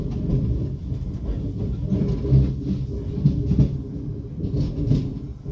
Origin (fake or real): real